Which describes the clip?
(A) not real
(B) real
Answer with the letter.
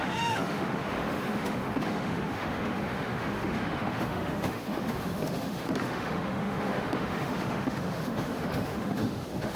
A